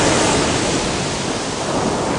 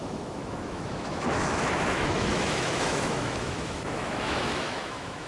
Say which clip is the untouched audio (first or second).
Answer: first